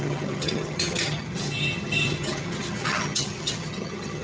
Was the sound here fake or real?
fake